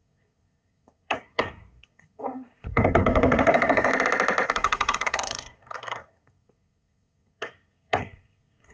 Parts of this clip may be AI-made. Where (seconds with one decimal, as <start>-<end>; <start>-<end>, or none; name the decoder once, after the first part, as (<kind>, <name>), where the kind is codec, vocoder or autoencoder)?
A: 0.0-3.9 (codec, SNAC); 4.5-8.7

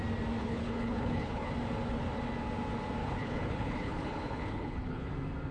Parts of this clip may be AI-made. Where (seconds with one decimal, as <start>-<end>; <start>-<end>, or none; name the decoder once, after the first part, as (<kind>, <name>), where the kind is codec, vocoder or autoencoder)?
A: 0.4-1.5 (codec, HILCodec); 3.0-5.1

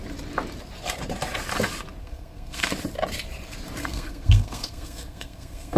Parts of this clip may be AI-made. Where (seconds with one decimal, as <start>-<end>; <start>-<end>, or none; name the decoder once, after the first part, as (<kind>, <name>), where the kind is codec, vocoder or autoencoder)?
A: 2.0-2.7 (codec, SNAC); 3.8-5.8

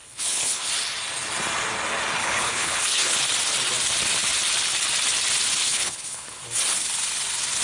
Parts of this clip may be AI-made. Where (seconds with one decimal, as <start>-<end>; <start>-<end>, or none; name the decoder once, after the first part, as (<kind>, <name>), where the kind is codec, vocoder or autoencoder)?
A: 0.0-0.7 (codec, HILCodec); 2.2-3.2; 5.6-6.4

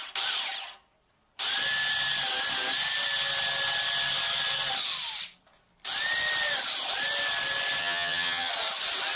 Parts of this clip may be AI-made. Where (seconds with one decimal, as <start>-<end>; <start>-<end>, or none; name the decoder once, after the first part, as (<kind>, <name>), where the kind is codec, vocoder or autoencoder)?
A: 7.8-8.5 (vocoder, HiFi-GAN)

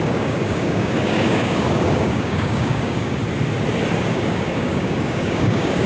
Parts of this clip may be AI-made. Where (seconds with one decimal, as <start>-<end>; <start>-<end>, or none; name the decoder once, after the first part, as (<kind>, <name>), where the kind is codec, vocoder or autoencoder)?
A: 0.0-3.2 (codec, DAC); 4.1-5.9

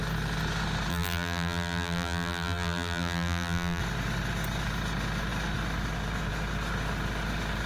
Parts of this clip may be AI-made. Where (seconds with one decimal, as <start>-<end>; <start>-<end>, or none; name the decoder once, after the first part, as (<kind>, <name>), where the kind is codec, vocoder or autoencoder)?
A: 0.9-3.8 (vocoder, BigVGAN v2)

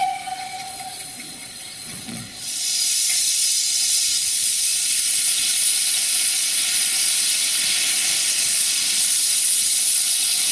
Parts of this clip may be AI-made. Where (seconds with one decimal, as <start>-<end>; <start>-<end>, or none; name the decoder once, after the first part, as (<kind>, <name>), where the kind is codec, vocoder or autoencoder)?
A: 0.0-7.0 (vocoder, Vocos); 9.8-10.5